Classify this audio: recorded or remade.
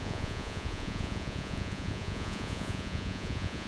remade